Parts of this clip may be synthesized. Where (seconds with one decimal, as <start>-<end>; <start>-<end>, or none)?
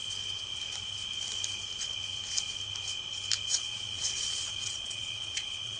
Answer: 3.5-5.8